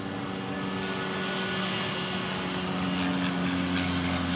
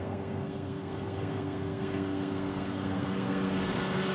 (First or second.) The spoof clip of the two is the second